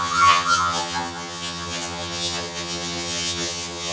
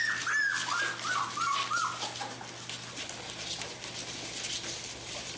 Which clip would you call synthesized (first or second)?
first